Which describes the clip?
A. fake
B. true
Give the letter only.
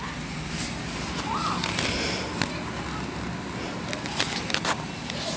B